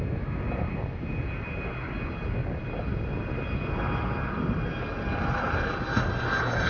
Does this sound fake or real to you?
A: real